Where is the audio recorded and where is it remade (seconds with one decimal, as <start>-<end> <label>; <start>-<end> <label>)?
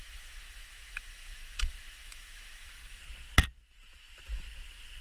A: 0.0-3.0 remade; 3.0-5.0 recorded